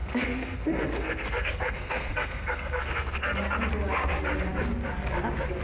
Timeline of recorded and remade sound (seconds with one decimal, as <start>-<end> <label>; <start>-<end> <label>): 0.0-3.4 remade; 3.4-5.6 recorded